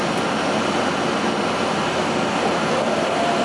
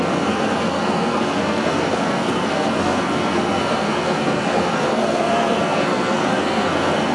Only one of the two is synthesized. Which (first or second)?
second